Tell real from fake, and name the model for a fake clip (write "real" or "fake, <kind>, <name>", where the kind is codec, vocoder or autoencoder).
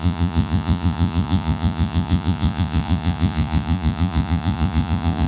fake, vocoder, Vocos